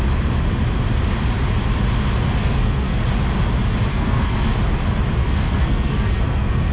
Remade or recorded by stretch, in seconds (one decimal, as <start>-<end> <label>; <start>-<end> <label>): 0.0-2.4 recorded; 2.4-3.0 remade; 3.0-3.9 recorded; 3.9-4.5 remade; 4.5-5.2 recorded; 5.2-6.7 remade